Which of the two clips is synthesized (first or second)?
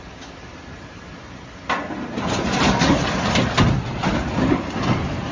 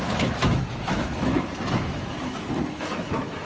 second